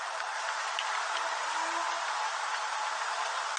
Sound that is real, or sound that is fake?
real